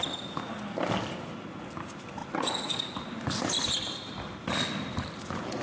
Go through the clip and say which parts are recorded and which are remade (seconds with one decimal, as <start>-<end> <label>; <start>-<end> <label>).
0.0-5.6 recorded